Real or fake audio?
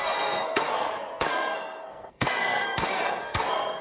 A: fake